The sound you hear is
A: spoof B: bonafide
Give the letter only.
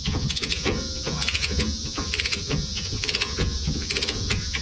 A